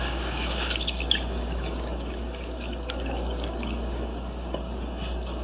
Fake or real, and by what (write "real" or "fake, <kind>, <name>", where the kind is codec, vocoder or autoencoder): fake, codec, DAC